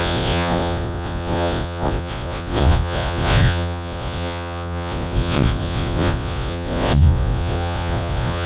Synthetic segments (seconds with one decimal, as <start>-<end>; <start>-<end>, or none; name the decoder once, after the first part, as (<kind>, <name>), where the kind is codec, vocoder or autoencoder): 0.0-8.5 (vocoder, Vocos)